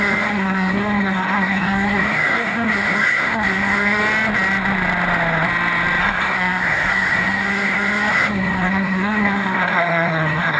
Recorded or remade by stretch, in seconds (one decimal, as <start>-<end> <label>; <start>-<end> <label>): 0.0-4.0 remade; 4.0-6.0 recorded; 6.0-10.6 remade